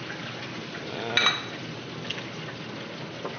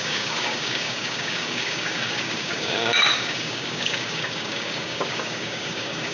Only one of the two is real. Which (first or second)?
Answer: first